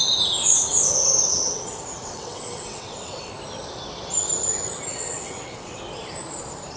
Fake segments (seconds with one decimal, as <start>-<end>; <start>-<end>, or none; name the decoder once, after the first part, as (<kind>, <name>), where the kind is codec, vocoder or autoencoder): 1.3-3.3 (vocoder, WaveNeXt); 4.9-5.8